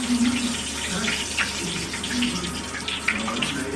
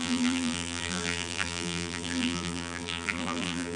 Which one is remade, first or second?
second